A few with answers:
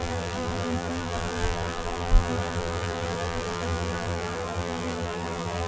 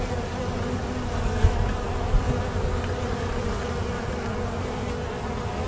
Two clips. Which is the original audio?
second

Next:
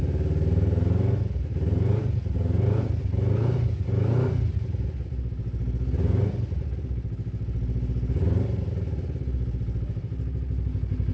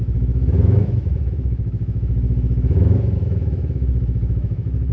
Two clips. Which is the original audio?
first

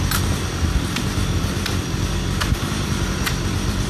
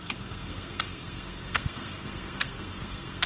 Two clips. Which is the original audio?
first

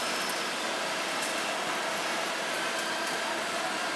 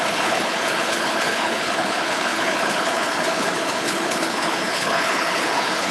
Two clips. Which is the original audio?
first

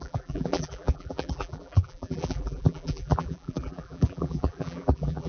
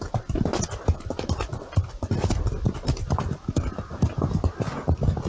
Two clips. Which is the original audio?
second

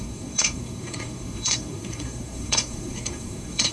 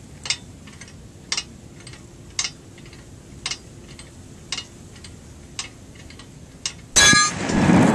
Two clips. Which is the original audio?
second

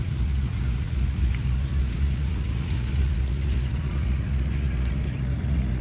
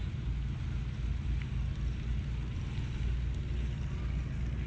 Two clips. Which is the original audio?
second